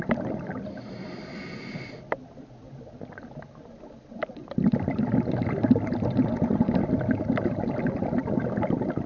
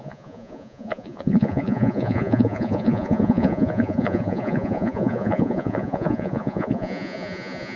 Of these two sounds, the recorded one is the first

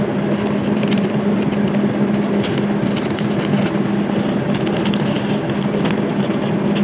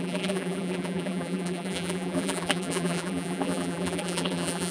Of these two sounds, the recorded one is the first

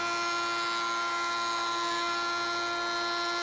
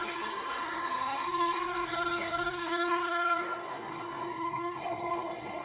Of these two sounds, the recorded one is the first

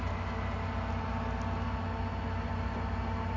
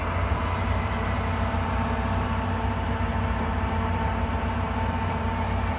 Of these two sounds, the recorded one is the first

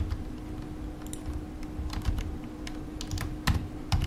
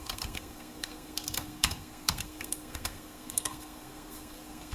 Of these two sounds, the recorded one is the first